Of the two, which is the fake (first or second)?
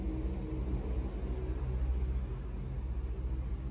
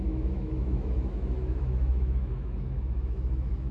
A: second